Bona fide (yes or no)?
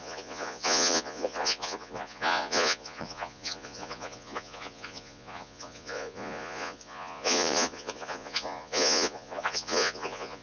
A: no